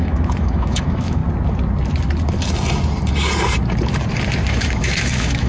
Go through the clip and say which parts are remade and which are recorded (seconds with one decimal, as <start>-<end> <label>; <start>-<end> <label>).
0.0-1.2 remade; 1.2-4.5 recorded; 4.5-5.5 remade